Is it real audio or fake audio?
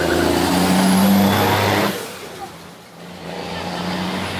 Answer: real